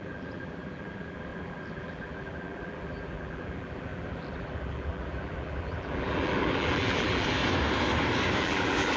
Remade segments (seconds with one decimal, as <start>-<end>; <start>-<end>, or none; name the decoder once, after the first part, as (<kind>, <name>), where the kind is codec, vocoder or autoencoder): 0.0-7.4 (vocoder, BigVGAN v2); 8.4-9.0